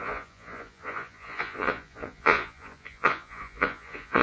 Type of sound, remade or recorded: remade